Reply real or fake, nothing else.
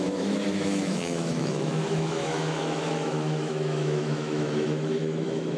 fake